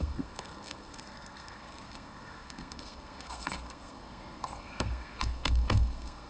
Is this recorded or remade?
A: remade